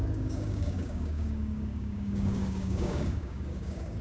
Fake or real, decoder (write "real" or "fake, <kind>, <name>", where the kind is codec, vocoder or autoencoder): fake, codec, DAC